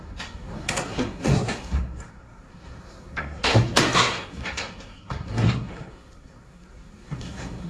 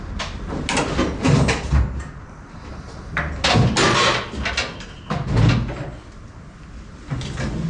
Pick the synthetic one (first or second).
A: first